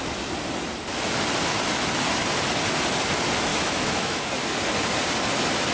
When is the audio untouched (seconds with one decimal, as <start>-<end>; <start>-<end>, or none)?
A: 0.0-3.5; 4.2-5.7